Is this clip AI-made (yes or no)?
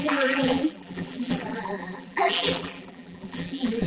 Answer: yes